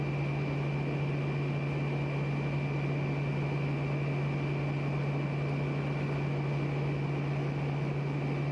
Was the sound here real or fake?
real